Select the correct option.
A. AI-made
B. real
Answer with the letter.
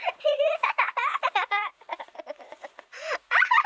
A